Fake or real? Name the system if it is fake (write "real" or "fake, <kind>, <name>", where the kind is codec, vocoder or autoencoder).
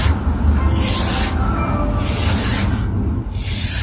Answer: real